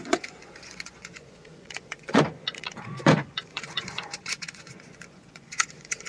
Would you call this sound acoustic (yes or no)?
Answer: no